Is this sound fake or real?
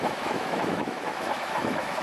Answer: fake